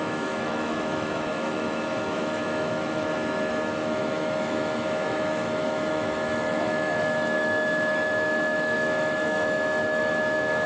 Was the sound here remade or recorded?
remade